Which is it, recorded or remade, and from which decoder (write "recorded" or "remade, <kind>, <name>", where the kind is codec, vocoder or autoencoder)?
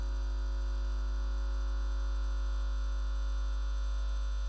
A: recorded